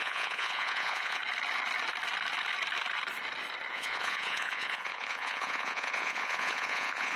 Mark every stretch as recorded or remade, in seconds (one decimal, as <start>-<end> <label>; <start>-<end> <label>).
0.0-1.2 remade; 1.2-3.7 recorded; 3.7-7.2 remade